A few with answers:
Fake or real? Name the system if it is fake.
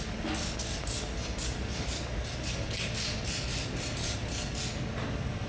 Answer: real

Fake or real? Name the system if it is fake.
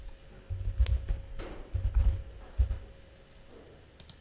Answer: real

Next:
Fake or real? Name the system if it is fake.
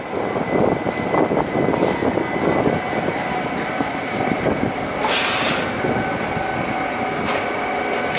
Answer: real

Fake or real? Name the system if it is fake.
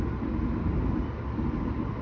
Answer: real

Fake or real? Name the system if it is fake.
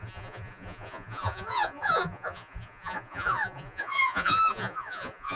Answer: fake, vocoder, Vocos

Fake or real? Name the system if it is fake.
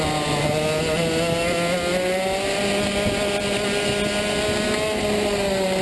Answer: real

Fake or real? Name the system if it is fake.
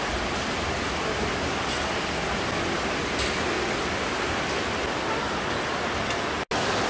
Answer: real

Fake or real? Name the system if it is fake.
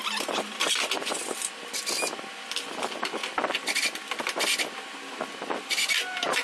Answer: real